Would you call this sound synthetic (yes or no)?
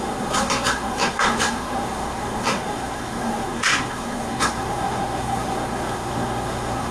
yes